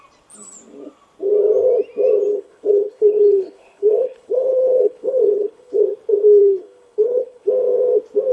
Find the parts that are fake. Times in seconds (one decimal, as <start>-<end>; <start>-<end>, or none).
2.3-5.8; 6.4-7.5